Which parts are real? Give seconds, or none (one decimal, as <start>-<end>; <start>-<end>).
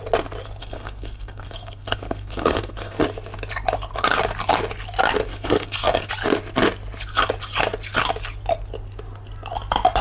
0.0-0.6; 3.0-5.3; 6.1-10.0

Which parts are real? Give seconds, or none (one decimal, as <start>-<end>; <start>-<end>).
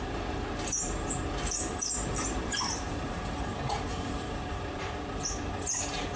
none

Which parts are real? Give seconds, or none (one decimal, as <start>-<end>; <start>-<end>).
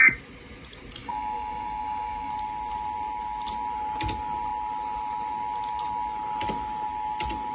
0.0-1.0; 2.3-7.5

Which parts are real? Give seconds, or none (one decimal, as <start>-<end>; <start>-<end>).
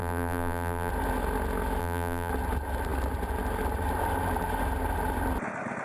0.9-1.8; 2.3-5.8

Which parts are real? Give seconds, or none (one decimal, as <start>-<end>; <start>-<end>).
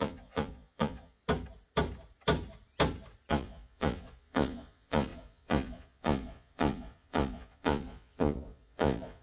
1.2-3.3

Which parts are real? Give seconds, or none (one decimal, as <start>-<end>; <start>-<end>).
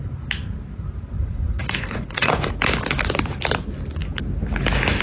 0.0-1.2; 2.5-5.0